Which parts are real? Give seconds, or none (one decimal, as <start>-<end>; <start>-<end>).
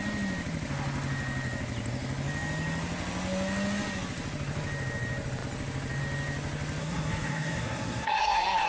0.0-6.8